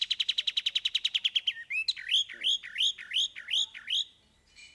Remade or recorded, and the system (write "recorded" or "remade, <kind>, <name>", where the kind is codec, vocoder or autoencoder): recorded